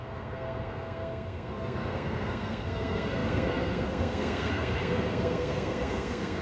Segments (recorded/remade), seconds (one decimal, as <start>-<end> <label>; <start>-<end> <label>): 0.0-6.4 remade